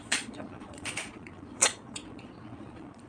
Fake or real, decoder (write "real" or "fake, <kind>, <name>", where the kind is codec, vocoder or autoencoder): fake, vocoder, Vocos